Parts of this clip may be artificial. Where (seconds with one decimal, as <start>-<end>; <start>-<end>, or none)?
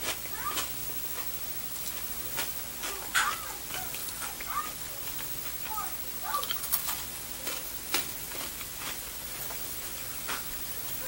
4.0-5.0; 6.3-9.4